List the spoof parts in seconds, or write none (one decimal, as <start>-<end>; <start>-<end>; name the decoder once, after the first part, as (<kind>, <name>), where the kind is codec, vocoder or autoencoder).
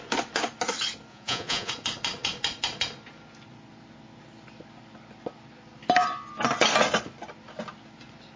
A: 1.1-1.7 (vocoder, Vocos)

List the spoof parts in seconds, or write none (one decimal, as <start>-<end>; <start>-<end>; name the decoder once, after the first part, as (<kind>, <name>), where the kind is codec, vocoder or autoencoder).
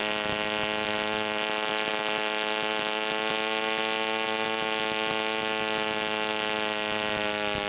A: none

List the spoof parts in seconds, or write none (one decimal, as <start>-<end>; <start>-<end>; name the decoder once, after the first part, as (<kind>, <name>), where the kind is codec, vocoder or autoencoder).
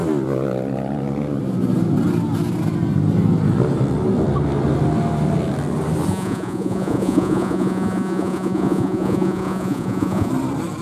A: 6.1-10.3 (vocoder, Vocos)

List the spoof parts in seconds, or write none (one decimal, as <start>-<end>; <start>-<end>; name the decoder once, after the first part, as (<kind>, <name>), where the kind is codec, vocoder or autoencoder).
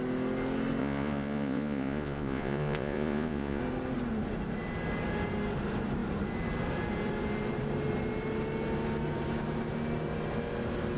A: 0.8-3.6 (vocoder, Vocos)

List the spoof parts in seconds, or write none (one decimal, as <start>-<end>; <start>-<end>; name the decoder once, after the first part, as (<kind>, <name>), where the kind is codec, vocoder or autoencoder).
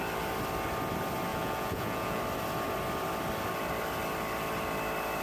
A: 1.3-2.2 (vocoder, Vocos)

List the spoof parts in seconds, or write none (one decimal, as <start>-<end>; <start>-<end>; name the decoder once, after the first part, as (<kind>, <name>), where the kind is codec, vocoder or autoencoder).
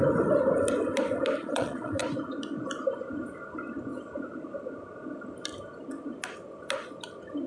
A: 1.4-2.0 (vocoder, Vocos)